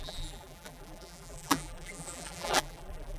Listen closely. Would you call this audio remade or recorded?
remade